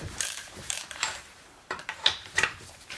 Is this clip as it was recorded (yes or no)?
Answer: no